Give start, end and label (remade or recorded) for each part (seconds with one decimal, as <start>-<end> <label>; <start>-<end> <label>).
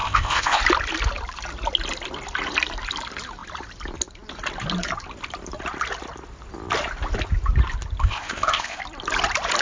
0.0-0.6 remade; 0.6-8.0 recorded; 8.0-8.8 remade; 8.8-9.6 recorded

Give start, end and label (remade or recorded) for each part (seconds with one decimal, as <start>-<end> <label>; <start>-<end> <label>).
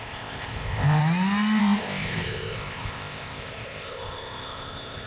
0.0-1.0 remade; 1.0-1.6 recorded; 1.6-5.1 remade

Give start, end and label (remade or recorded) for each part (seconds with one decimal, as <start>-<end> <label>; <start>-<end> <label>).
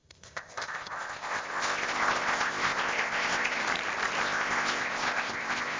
0.0-3.6 remade; 3.6-4.2 recorded; 4.2-5.8 remade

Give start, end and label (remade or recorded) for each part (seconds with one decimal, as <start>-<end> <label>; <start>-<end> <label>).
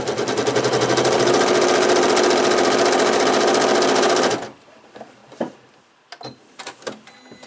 0.0-7.5 recorded